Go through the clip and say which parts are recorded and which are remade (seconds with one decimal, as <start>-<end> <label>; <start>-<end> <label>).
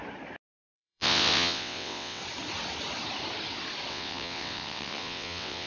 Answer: 0.0-0.6 recorded; 0.6-2.2 remade; 2.2-3.9 recorded; 3.9-5.7 remade